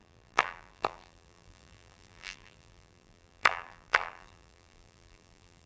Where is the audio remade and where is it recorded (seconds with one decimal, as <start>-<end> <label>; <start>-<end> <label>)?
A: 0.0-5.7 remade